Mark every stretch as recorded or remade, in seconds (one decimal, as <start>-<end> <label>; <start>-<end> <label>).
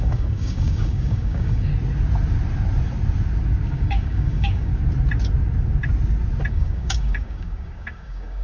0.0-1.7 remade; 1.7-3.7 recorded; 3.7-4.7 remade; 4.7-6.5 recorded; 6.5-8.4 remade